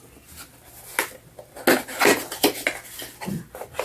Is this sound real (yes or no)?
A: yes